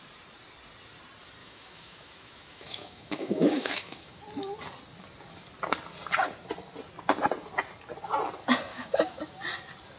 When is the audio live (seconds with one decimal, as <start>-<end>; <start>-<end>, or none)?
0.0-1.4; 4.2-8.7; 9.2-10.0